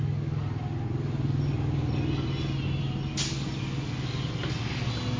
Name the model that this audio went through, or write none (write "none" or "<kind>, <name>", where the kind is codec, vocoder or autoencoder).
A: none